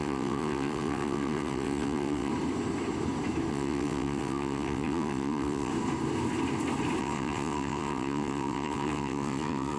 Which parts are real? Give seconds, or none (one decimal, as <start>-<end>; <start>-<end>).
2.3-3.5; 5.7-7.0